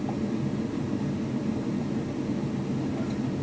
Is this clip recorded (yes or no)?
yes